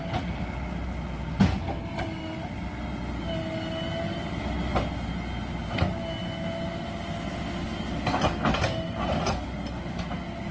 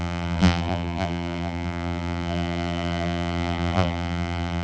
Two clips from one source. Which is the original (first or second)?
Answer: first